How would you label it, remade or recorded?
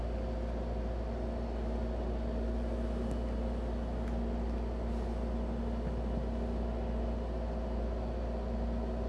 recorded